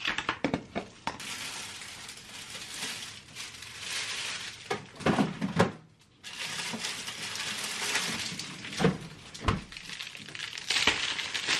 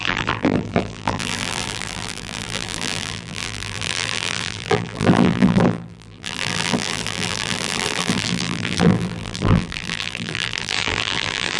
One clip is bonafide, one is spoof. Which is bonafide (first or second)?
first